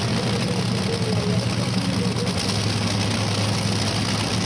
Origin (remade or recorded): recorded